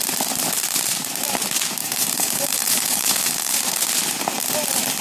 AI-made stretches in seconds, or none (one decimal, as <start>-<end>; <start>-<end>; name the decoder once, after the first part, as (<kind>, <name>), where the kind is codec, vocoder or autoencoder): 1.8-3.5 (codec, DAC)